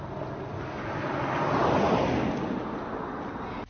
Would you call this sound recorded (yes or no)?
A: yes